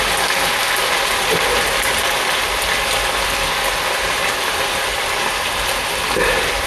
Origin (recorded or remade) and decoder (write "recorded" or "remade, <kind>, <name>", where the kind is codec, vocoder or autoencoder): recorded